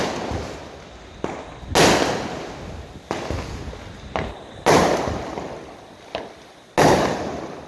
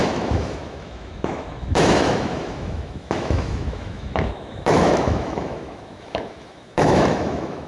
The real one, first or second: first